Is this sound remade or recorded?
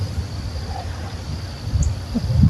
recorded